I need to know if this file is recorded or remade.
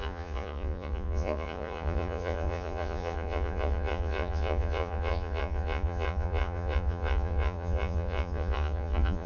remade